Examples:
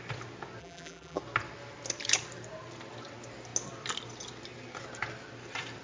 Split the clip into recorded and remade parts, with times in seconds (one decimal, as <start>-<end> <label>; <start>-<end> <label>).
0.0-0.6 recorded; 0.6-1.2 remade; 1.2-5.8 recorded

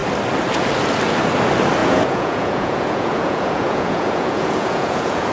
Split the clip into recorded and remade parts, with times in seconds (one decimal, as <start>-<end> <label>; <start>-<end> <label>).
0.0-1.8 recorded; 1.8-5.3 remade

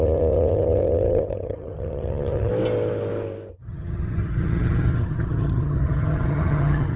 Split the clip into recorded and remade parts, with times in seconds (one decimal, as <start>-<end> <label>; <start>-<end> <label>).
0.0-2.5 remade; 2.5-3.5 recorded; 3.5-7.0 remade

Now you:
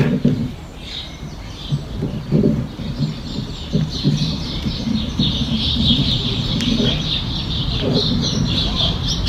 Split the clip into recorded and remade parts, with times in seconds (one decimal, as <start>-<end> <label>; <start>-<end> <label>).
0.0-0.7 remade; 0.7-3.7 recorded; 3.7-6.7 remade; 6.7-8.3 recorded; 8.3-9.3 remade